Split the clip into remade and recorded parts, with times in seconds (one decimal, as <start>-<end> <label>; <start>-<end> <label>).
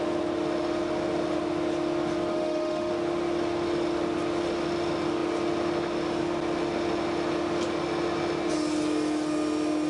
0.0-2.3 recorded; 2.3-2.9 remade; 2.9-9.9 recorded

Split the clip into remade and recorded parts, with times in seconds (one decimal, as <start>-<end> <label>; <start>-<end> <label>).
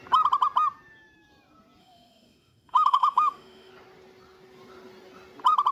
0.0-1.8 recorded; 1.8-3.7 remade; 3.7-5.7 recorded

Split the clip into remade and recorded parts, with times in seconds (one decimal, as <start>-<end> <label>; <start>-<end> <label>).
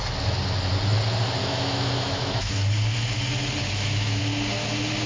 0.0-1.4 recorded; 1.4-2.5 remade; 2.5-3.6 recorded; 3.6-4.2 remade; 4.2-5.1 recorded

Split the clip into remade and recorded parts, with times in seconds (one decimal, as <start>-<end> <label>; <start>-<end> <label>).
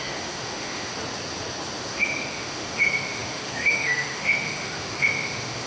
0.0-0.9 remade; 0.9-1.8 recorded; 1.8-5.7 remade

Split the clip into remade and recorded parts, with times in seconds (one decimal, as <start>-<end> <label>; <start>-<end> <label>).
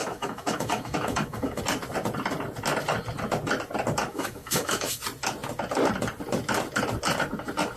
0.0-1.6 remade; 1.6-4.1 recorded; 4.1-5.0 remade; 5.0-7.8 recorded